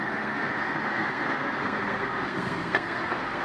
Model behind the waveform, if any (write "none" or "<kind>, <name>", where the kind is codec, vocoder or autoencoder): codec, SNAC